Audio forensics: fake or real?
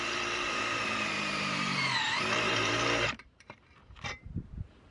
fake